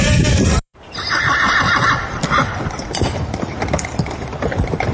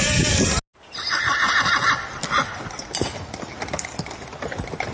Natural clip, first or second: second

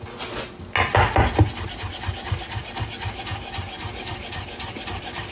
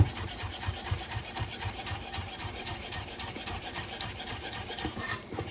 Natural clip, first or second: first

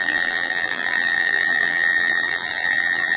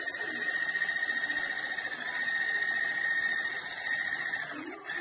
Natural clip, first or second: second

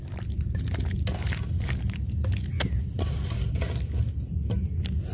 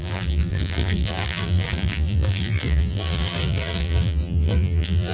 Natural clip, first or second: first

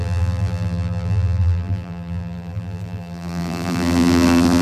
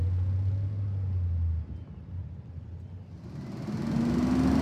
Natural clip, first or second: second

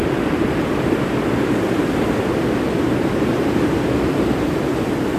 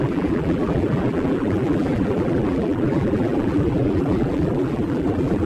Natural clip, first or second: first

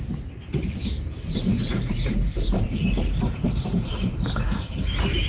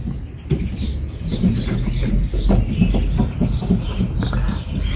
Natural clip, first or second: second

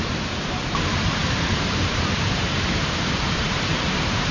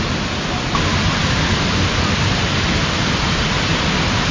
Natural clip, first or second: second